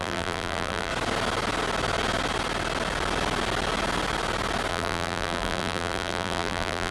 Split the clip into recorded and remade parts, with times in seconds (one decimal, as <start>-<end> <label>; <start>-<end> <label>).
0.0-0.9 remade; 0.9-4.7 recorded; 4.7-6.9 remade